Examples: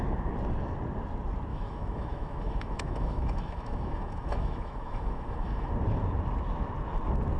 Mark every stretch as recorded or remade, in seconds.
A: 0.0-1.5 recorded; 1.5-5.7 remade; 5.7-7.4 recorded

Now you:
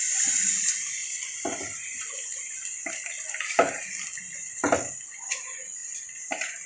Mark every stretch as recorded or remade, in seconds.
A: 0.0-6.7 recorded

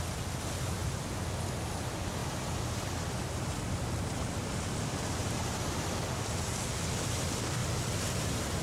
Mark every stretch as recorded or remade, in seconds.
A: 0.0-7.6 recorded; 7.6-8.2 remade; 8.2-8.6 recorded

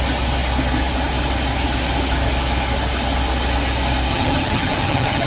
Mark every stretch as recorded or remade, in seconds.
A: 0.0-4.1 recorded; 4.1-5.3 remade

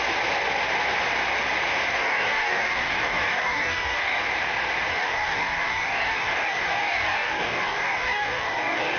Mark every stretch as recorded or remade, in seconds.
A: 0.0-2.0 recorded; 2.0-4.2 remade; 4.2-4.9 recorded; 4.9-9.0 remade